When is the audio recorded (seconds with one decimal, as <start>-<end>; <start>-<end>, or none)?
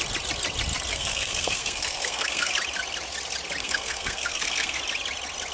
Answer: 0.0-0.9; 2.5-3.6; 4.8-5.5